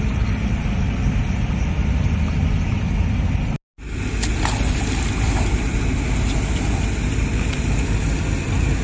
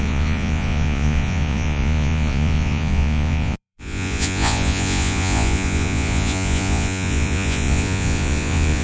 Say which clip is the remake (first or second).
second